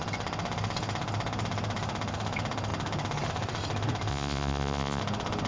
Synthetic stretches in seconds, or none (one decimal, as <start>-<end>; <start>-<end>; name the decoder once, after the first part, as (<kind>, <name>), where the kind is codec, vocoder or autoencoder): 4.1-5.0 (vocoder, Vocos)